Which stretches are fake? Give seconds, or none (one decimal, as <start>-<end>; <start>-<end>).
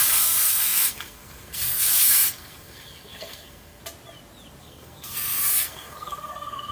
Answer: 0.0-3.8; 4.6-6.7